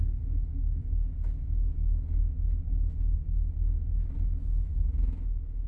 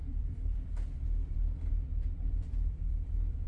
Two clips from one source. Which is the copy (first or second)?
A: second